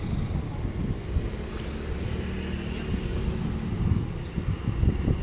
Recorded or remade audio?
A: recorded